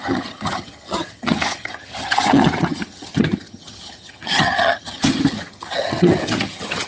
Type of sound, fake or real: fake